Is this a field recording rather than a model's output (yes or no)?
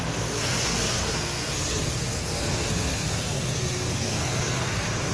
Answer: no